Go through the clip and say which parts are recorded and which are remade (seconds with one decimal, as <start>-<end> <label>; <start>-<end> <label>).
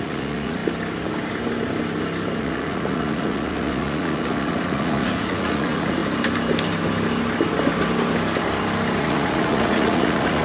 0.0-0.6 remade; 0.6-2.4 recorded; 2.4-6.0 remade; 6.0-9.0 recorded; 9.0-10.4 remade